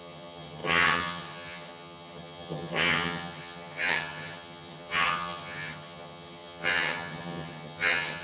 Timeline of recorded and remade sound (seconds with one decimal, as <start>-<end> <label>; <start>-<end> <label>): 0.0-8.2 remade